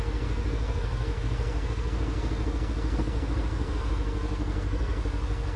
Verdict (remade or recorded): remade